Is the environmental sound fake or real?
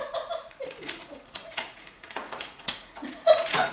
fake